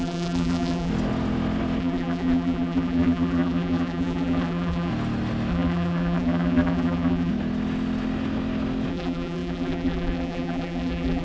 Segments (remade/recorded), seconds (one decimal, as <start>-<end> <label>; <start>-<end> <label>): 0.0-0.9 remade; 0.9-1.8 recorded; 1.8-4.9 remade; 4.9-5.5 recorded; 5.5-7.3 remade; 7.3-8.9 recorded; 8.9-11.2 remade